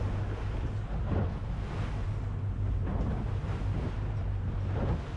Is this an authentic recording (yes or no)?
yes